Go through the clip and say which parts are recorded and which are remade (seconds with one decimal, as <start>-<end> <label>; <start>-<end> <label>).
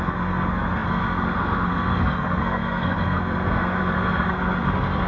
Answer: 0.0-5.1 remade